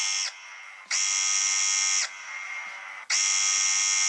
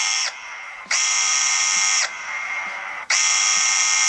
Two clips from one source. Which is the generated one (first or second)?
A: second